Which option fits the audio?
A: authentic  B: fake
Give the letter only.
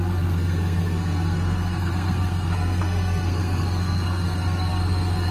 B